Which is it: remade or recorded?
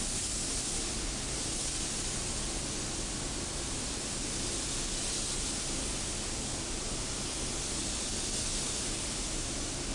recorded